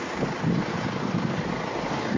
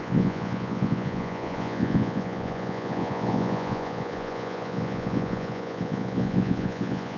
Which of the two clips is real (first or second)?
first